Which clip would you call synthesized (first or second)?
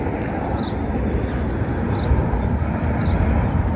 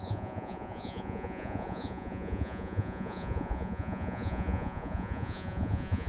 second